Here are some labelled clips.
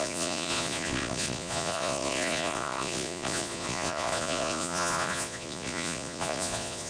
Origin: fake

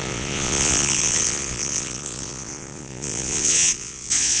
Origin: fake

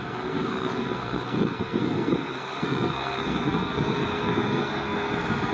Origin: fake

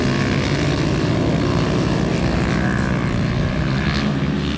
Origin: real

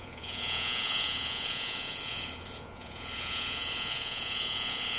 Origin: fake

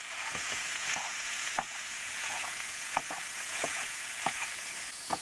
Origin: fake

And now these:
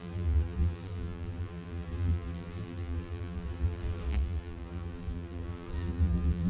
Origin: fake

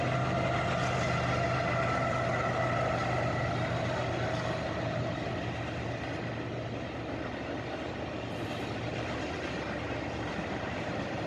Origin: real